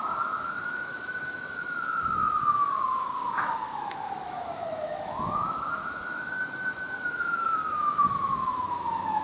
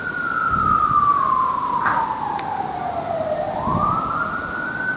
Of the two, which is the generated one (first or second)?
first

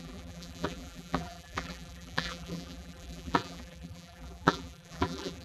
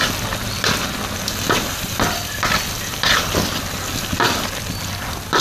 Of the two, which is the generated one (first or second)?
first